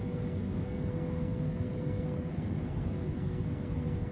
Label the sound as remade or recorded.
remade